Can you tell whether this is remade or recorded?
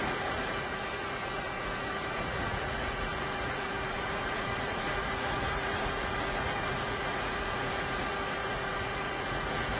remade